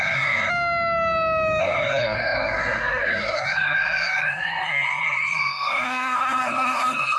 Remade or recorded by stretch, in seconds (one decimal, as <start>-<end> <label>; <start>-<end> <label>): 0.0-0.5 remade; 0.5-1.6 recorded; 1.6-7.2 remade